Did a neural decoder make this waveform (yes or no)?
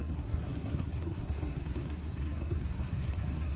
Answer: yes